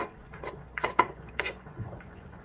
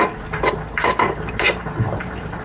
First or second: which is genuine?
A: second